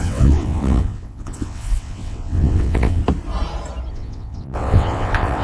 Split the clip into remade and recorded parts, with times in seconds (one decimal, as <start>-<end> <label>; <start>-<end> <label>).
0.0-3.0 remade; 3.0-3.9 recorded; 3.9-5.4 remade